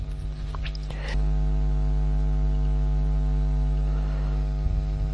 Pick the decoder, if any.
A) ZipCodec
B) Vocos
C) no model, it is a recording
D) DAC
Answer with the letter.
C